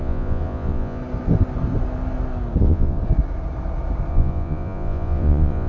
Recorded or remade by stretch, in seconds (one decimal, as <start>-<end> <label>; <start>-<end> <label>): 0.0-1.0 remade; 1.0-2.6 recorded; 2.6-3.0 remade; 3.0-4.1 recorded; 4.1-5.7 remade